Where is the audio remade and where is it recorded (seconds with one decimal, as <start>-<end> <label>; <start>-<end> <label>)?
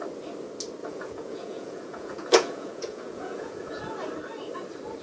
0.0-0.8 recorded; 0.8-3.8 remade; 3.8-5.0 recorded